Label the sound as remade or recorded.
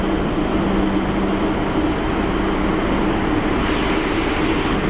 recorded